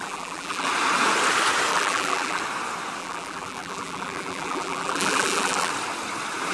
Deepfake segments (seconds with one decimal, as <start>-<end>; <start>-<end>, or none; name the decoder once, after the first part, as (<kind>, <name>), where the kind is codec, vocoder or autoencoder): 0.0-0.7 (vocoder, BigVGAN v2); 1.7-2.4; 3.0-5.7